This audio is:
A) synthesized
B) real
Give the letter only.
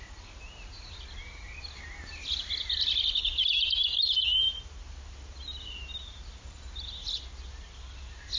B